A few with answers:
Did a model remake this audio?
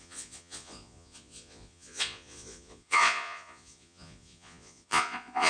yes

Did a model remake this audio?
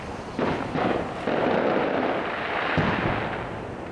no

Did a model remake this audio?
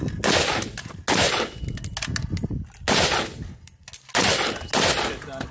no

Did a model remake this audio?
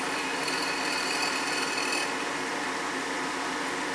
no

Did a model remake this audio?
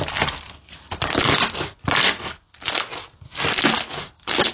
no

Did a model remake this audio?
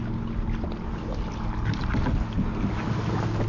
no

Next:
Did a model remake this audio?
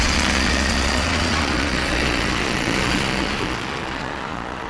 yes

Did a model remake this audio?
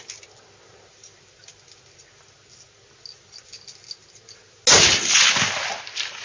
no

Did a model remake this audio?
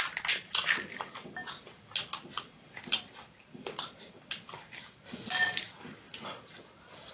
no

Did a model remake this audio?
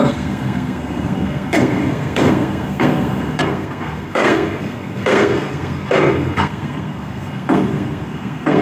yes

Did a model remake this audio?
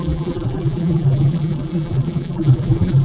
yes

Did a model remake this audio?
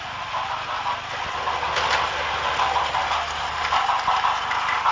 no